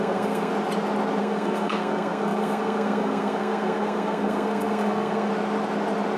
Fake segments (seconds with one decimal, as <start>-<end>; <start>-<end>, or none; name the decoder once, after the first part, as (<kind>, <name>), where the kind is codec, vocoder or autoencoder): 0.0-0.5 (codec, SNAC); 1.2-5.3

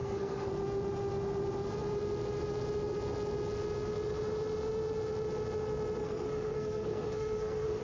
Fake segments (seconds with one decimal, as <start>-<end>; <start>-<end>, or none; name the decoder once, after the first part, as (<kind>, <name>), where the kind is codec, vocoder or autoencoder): 0.0-0.5 (codec, SNAC); 6.0-7.8

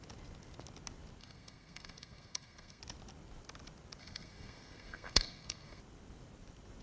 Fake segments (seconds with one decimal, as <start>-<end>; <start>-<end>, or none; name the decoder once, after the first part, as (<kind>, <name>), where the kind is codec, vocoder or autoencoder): 1.2-2.8 (codec, SNAC); 4.0-5.8

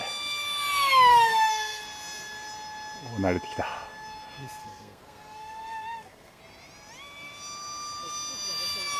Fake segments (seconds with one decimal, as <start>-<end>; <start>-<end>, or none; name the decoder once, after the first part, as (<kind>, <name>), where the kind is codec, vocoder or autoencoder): 1.1-1.8 (codec, SNAC); 4.6-6.4

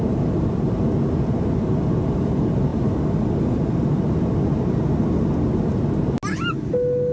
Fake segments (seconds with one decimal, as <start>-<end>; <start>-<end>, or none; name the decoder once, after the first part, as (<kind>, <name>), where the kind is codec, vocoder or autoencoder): none

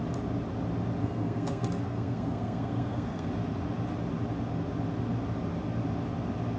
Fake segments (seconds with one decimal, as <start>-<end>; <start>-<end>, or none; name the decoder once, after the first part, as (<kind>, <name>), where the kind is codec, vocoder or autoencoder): 1.0-3.3 (codec, SNAC)

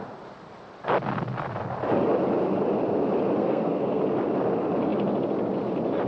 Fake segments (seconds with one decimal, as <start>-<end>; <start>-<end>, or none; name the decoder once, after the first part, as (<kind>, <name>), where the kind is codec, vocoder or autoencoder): 3.4-4.0 (codec, SNAC)